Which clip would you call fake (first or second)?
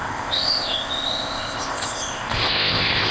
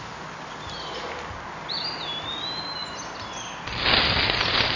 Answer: first